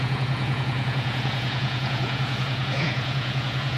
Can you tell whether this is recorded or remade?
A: remade